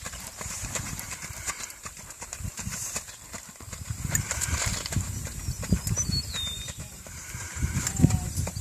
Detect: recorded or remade remade